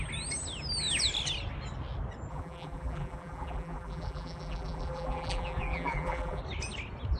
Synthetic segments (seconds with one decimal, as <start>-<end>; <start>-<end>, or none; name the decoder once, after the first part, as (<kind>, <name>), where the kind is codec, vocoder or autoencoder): 2.3-6.4 (vocoder, BigVGAN v2)